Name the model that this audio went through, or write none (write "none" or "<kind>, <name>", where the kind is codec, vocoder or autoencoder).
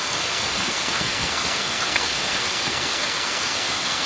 codec, SNAC